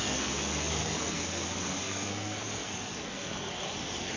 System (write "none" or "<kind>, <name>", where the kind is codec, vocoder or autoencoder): codec, SNAC